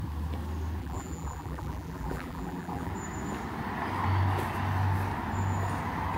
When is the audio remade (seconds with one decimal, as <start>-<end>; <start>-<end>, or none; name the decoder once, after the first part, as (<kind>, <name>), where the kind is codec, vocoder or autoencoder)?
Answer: 0.8-2.9 (vocoder, BigVGAN v2)